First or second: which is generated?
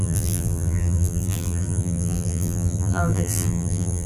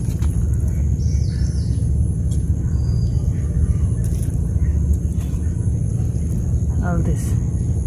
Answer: first